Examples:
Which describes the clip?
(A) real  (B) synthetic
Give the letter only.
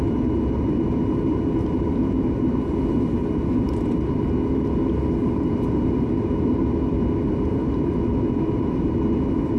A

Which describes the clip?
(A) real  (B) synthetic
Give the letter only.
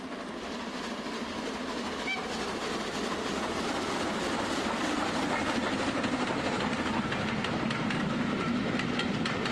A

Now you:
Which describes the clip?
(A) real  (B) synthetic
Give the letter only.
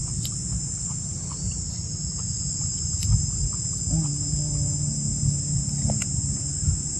A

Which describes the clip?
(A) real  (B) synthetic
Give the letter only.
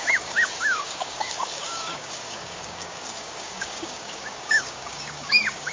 B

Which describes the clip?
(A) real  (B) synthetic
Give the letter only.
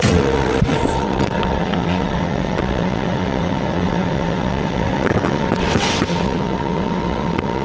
B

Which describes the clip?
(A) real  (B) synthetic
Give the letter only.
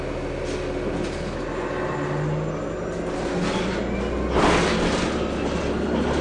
A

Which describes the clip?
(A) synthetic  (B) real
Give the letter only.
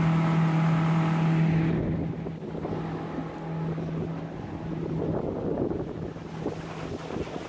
B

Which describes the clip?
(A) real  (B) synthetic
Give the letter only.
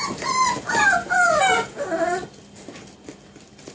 A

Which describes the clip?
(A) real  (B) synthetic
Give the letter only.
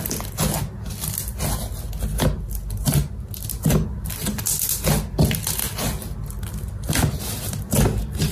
A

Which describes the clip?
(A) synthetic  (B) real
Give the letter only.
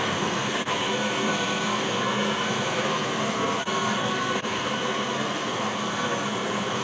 A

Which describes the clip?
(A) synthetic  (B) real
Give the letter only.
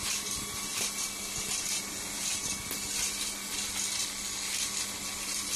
B